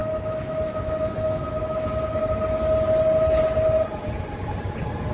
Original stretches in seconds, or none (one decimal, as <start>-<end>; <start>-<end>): 2.2-5.1

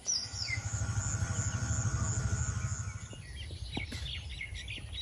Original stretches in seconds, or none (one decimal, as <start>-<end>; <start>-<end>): 0.8-5.0

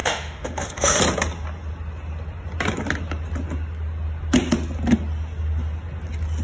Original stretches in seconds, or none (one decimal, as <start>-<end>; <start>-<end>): 1.0-6.4

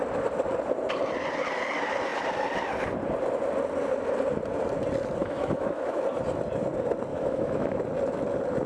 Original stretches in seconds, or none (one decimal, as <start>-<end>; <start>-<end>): 0.0-5.2; 6.0-7.1; 7.8-8.7

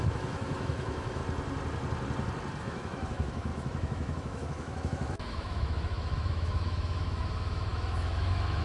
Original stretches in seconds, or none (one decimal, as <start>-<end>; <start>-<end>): 1.2-2.6